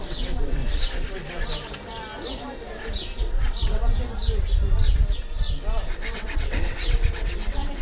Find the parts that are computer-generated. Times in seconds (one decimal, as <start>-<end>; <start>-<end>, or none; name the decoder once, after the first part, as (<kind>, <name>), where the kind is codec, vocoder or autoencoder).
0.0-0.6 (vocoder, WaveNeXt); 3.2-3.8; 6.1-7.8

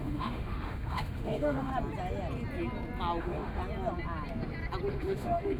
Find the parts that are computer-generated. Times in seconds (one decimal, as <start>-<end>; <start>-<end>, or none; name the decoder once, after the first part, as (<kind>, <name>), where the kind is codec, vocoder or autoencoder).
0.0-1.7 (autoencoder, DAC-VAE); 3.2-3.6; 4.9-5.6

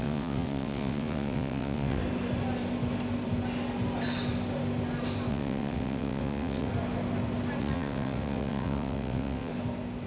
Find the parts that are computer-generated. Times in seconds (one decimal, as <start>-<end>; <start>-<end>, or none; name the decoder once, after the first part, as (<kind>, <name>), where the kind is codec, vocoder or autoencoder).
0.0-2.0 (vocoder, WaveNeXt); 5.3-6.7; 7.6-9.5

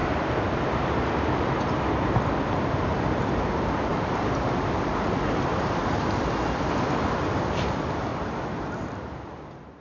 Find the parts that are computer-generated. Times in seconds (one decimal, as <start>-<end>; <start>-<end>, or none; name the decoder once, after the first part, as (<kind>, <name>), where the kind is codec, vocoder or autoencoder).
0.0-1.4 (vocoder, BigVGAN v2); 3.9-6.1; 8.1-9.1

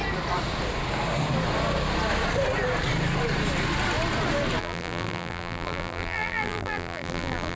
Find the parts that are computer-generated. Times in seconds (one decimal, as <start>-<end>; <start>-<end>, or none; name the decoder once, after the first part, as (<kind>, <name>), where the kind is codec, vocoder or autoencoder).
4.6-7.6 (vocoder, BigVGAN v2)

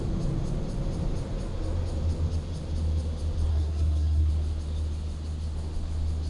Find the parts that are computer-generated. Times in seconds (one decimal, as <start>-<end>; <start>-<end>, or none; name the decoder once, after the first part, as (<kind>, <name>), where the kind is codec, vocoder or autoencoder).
3.5-4.3 (codec, SNAC)